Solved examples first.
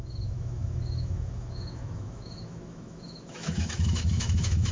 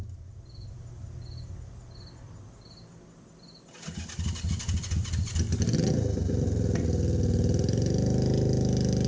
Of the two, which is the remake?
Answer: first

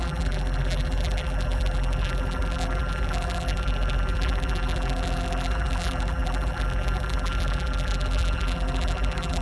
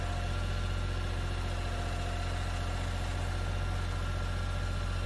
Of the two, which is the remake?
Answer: first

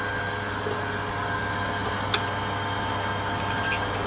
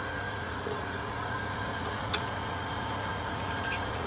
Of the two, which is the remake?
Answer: second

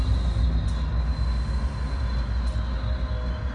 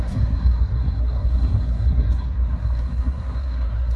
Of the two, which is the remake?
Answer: second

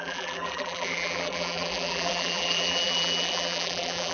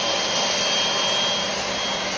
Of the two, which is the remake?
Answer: first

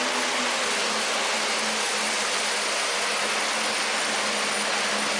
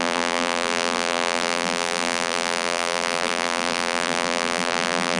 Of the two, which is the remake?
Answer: second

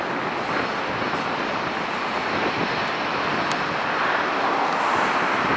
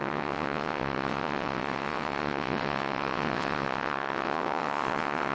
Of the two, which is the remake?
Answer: second